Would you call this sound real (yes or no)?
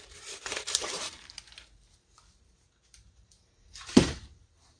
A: no